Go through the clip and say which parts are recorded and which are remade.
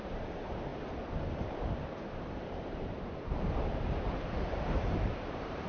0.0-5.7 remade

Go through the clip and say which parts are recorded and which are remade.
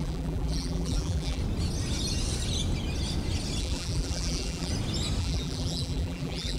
0.0-1.4 remade; 1.4-3.6 recorded; 3.6-4.7 remade; 4.7-5.2 recorded; 5.2-6.6 remade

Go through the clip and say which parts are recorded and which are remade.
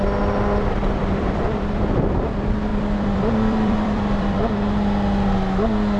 0.0-0.8 recorded; 0.8-2.3 remade; 2.3-2.7 recorded; 2.7-4.5 remade; 4.5-6.0 recorded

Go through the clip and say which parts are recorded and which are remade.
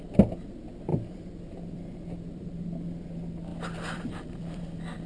0.0-0.9 recorded; 0.9-3.1 remade; 3.1-3.5 recorded; 3.5-4.6 remade; 4.6-5.1 recorded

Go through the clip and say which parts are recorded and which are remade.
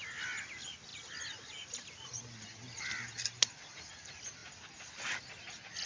0.0-5.9 recorded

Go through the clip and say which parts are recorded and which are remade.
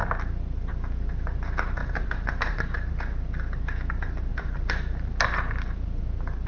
0.0-1.8 recorded; 1.8-2.9 remade; 2.9-4.3 recorded; 4.3-6.0 remade; 6.0-6.5 recorded